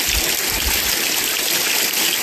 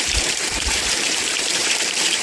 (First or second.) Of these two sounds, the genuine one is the first